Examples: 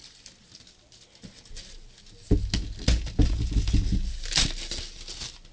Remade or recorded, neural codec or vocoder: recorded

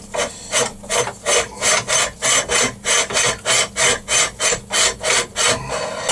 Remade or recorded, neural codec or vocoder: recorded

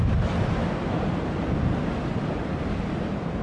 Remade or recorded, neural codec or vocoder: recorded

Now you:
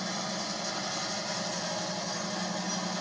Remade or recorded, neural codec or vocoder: recorded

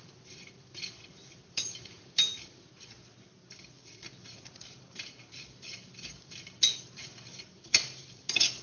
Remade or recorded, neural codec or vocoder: recorded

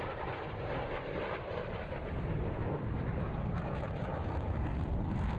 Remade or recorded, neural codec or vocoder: remade, vocoder, BigVGAN v2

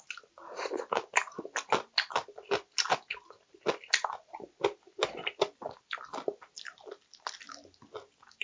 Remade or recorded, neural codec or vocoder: recorded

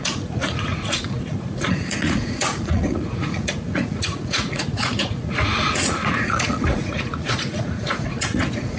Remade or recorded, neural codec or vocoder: remade, vocoder, Vocos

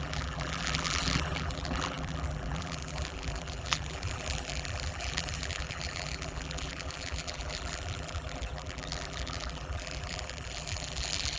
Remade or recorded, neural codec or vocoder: remade, vocoder, BigVGAN v2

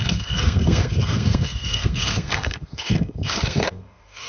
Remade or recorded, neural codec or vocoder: remade, codec, SNAC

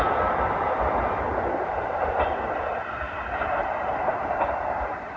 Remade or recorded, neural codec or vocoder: recorded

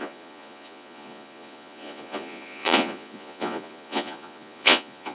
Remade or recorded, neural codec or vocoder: remade, vocoder, Vocos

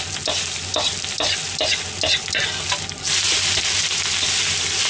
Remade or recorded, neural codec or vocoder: recorded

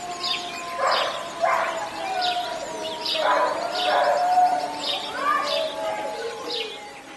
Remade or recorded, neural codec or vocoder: remade, vocoder, BigVGAN v2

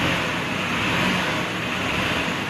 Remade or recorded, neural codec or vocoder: recorded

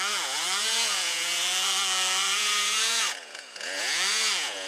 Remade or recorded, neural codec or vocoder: remade, vocoder, Vocos